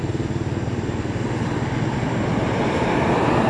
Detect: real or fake real